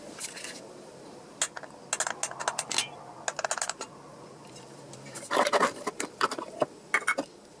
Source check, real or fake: real